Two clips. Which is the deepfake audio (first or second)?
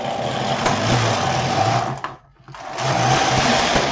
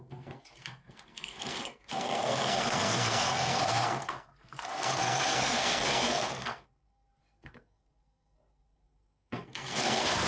second